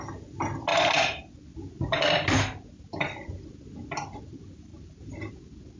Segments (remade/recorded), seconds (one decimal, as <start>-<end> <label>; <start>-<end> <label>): 0.0-4.7 recorded; 4.7-5.3 remade; 5.3-5.8 recorded